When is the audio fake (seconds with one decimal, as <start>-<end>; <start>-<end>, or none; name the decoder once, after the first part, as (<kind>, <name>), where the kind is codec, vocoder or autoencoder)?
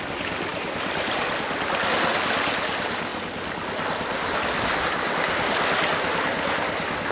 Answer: 0.5-1.9 (vocoder, BigVGAN v2)